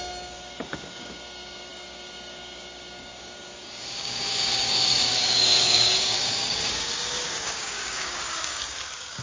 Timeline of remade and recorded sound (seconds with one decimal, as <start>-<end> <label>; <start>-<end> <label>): 0.0-9.2 remade